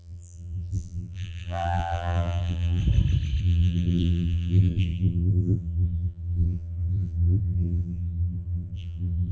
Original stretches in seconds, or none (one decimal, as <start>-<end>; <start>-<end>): 2.8-3.4